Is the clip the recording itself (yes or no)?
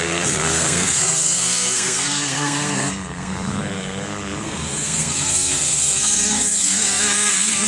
no